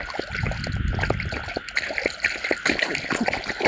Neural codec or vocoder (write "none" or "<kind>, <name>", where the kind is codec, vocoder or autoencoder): none